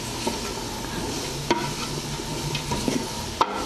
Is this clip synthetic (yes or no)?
no